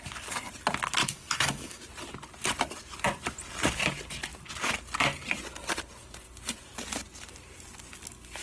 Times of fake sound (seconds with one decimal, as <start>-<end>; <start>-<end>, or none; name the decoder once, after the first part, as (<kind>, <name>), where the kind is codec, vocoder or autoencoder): 1.0-1.8 (autoencoder, DAC-VAE)